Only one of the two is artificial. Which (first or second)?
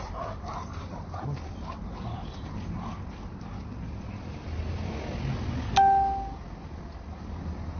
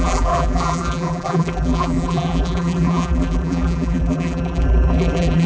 second